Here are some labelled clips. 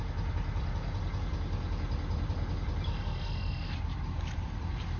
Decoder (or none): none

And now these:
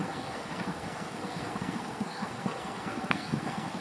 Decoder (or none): codec, SNAC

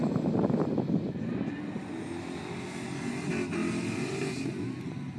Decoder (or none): none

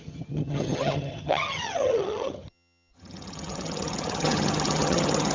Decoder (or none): vocoder, HiFi-GAN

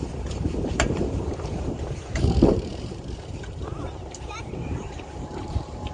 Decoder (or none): vocoder, BigVGAN v2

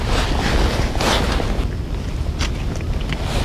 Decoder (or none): none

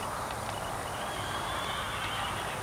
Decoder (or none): none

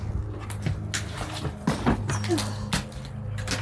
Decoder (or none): none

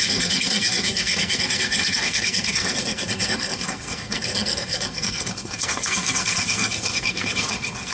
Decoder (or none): codec, SNAC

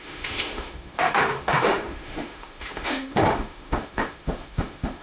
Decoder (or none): autoencoder, DAC-VAE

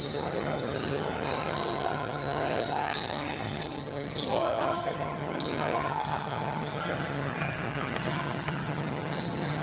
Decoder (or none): vocoder, HiFi-GAN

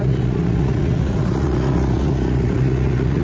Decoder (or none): vocoder, Vocos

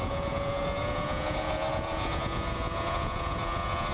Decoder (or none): vocoder, Vocos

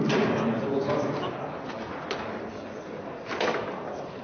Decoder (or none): none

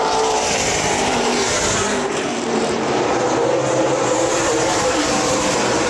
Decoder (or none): vocoder, BigVGAN v2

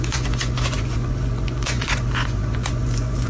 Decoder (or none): vocoder, Vocos